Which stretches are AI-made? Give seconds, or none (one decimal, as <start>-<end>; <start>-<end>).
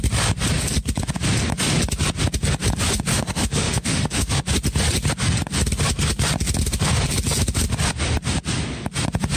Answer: 3.1-4.3